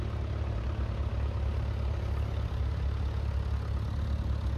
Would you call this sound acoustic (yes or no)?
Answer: yes